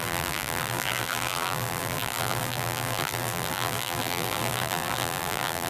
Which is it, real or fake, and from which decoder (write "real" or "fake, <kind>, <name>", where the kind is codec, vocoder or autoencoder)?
fake, vocoder, BigVGAN v2